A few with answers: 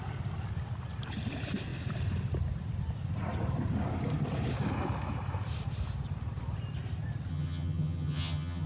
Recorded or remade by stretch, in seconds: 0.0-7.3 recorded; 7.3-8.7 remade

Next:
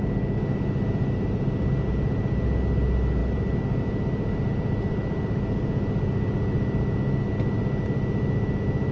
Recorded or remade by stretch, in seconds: 0.0-8.9 recorded

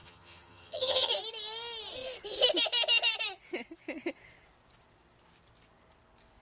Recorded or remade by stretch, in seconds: 0.0-1.1 remade; 1.1-6.4 recorded

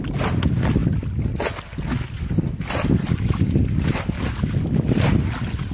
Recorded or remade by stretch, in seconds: 0.0-5.7 recorded

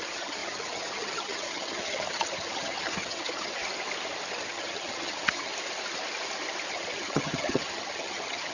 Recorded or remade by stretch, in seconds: 0.0-3.6 remade; 3.6-4.3 recorded; 4.3-5.5 remade; 5.5-6.7 recorded; 6.7-8.5 remade

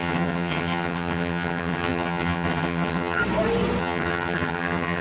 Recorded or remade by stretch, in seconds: 0.0-3.2 remade; 3.2-3.8 recorded; 3.8-5.0 remade